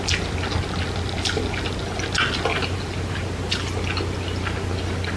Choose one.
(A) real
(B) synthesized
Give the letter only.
A